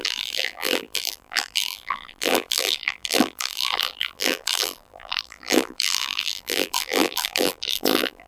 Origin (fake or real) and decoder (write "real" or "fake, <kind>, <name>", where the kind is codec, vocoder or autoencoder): fake, vocoder, BigVGAN v2